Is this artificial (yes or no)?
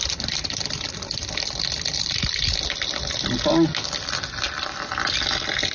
no